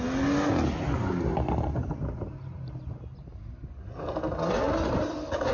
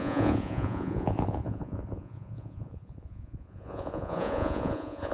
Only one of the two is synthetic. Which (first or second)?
second